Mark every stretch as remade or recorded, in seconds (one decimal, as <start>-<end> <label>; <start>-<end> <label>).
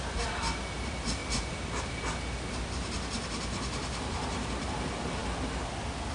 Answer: 0.0-6.1 recorded